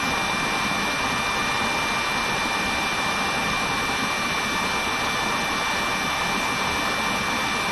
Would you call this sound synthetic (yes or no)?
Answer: no